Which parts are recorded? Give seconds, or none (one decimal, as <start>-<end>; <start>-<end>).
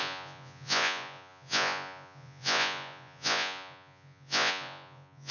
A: none